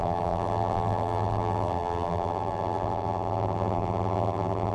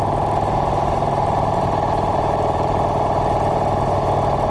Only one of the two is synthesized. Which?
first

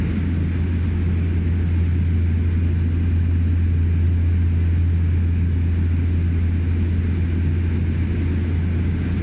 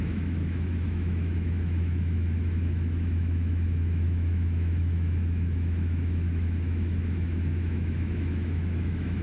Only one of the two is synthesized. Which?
second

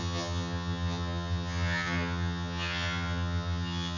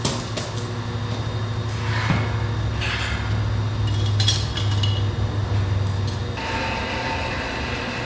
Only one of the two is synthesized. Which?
first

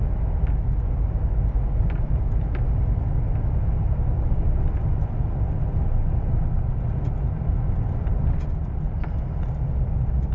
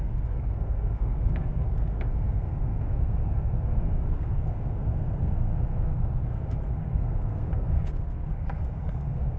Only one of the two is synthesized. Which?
second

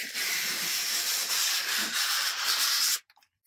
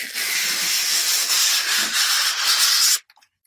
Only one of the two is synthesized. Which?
first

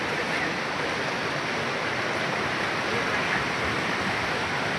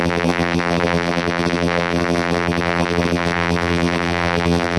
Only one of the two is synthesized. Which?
second